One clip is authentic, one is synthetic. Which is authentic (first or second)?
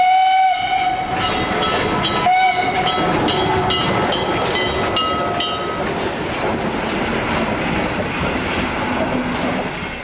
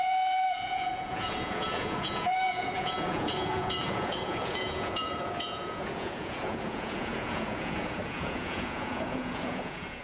first